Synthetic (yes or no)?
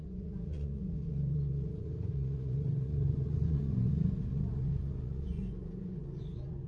yes